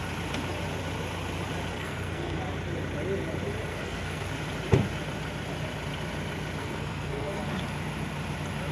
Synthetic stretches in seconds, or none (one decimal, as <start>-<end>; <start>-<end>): 1.7-2.4; 3.7-4.3; 6.6-7.4